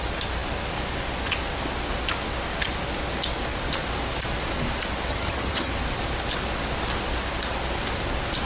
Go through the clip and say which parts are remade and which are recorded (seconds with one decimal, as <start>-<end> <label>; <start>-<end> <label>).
0.0-5.1 recorded; 5.1-5.7 remade; 5.7-8.5 recorded